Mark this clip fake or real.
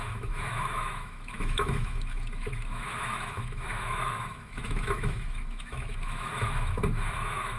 fake